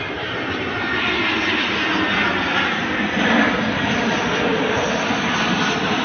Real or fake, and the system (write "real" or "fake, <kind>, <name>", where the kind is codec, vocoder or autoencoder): real